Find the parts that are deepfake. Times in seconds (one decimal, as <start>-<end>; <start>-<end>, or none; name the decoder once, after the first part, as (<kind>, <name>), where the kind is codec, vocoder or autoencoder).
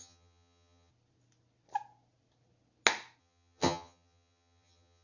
0.0-0.9 (vocoder, HiFi-GAN); 3.2-5.0